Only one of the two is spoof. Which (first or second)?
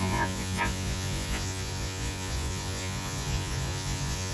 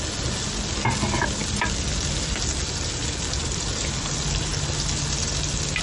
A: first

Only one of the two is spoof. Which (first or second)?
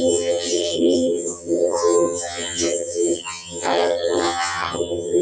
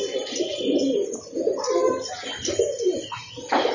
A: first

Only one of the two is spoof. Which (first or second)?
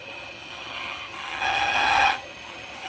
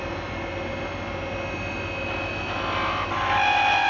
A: first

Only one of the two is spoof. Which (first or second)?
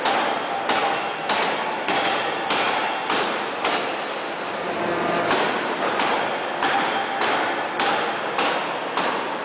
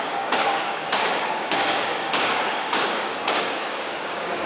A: second